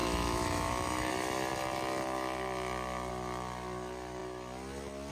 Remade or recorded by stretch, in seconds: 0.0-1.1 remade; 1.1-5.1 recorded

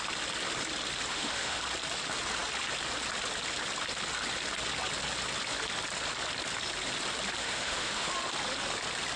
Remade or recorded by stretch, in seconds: 0.0-1.1 recorded; 1.1-1.6 remade; 1.6-7.4 recorded; 7.4-8.1 remade; 8.1-9.2 recorded

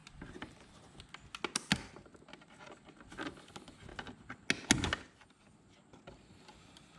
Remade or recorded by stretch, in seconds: 0.0-7.0 recorded

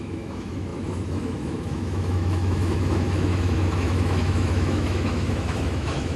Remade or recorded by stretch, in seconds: 0.0-6.2 remade

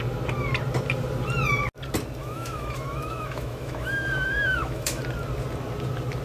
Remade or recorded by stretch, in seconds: 0.0-2.2 recorded; 2.2-5.0 remade; 5.0-6.2 recorded